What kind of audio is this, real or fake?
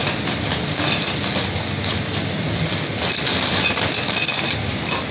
real